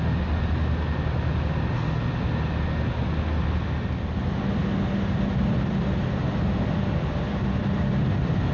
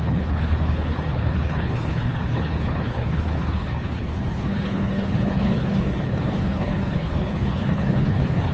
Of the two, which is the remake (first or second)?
second